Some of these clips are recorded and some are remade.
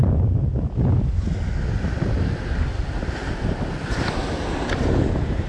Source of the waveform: recorded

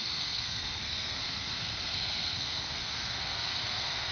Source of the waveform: remade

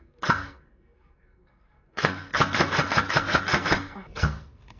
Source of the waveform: remade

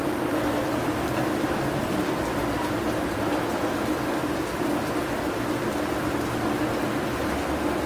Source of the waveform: recorded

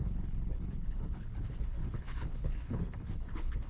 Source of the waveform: remade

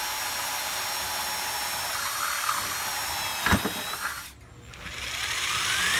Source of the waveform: recorded